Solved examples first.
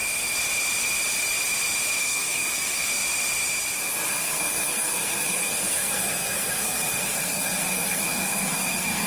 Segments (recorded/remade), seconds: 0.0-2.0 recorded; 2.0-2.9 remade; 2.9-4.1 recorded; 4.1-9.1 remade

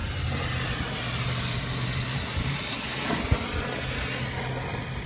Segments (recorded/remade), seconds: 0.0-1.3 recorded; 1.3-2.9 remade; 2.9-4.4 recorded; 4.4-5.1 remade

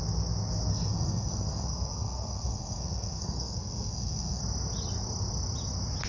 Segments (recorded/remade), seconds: 0.0-0.7 recorded; 0.7-4.4 remade; 4.4-6.1 recorded

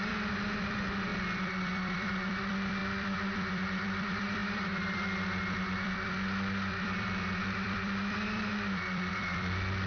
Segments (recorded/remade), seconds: 0.0-9.9 remade

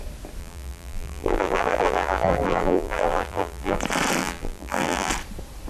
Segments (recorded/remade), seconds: 0.0-0.4 recorded; 0.4-3.8 remade; 3.8-4.2 recorded; 4.2-5.1 remade; 5.1-5.7 recorded